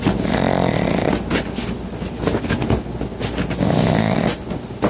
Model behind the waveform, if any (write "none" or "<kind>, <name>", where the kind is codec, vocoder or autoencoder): none